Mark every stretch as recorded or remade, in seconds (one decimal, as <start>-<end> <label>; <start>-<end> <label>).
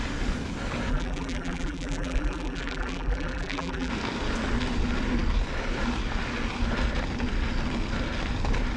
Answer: 0.0-0.9 recorded; 0.9-3.9 remade; 3.9-8.8 recorded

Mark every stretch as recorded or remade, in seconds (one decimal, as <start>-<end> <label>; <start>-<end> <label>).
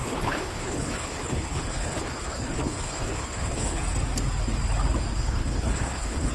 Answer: 0.0-3.8 remade; 3.8-5.1 recorded; 5.1-6.3 remade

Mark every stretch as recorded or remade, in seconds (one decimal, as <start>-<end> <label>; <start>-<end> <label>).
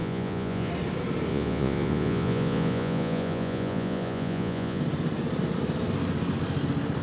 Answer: 0.0-0.7 remade; 0.7-1.3 recorded; 1.3-4.8 remade; 4.8-7.0 recorded